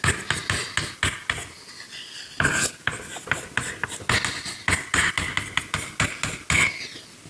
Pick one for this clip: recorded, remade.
recorded